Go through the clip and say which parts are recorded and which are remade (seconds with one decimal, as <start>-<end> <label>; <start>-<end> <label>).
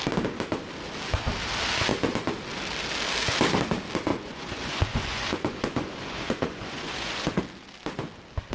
0.0-4.1 recorded; 4.1-7.4 remade; 7.4-8.5 recorded